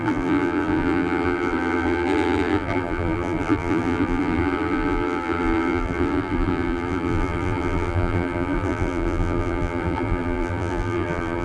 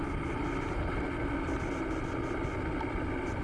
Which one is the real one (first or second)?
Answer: second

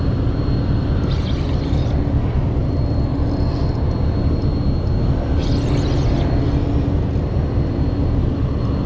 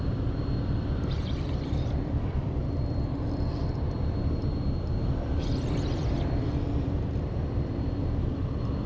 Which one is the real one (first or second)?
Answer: first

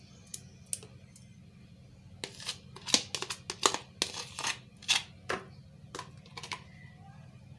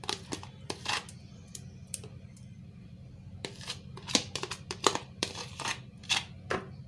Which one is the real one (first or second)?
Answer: first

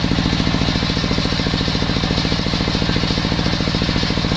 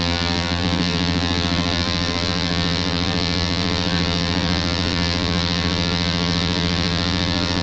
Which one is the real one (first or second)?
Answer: first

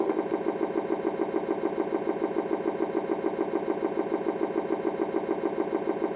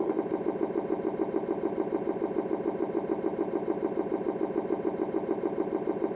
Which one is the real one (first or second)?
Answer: first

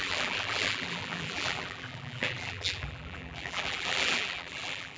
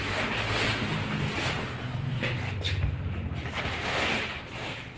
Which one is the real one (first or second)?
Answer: second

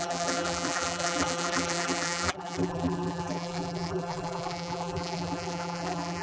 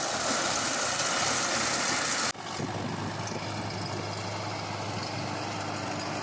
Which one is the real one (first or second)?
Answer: second